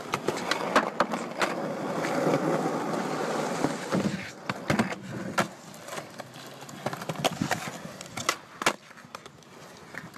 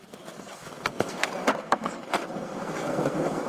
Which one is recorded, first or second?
first